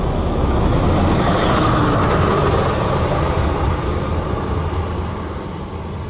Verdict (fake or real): real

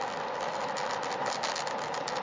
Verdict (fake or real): real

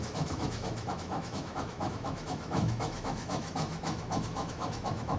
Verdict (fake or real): fake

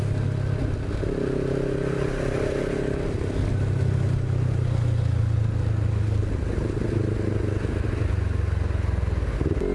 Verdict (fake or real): real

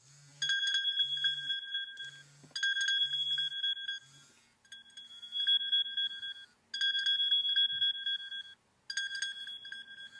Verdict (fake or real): real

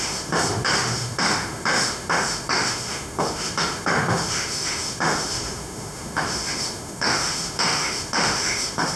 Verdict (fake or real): fake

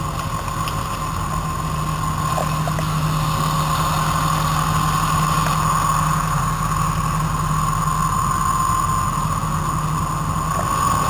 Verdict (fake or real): real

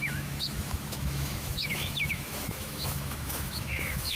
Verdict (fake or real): fake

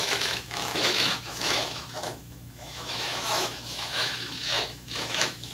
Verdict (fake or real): fake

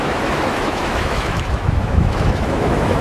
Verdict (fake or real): fake